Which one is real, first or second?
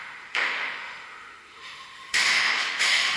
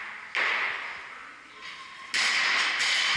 second